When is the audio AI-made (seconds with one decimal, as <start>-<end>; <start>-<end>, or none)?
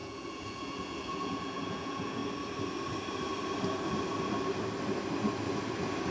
0.0-2.2